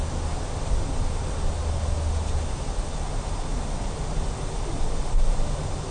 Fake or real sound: real